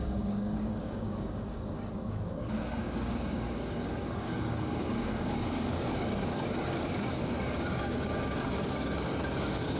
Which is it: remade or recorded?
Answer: remade